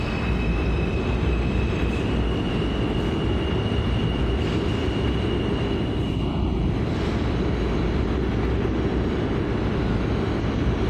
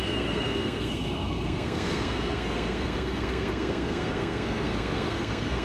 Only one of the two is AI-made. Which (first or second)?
second